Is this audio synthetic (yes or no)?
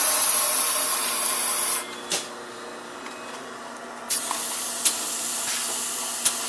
no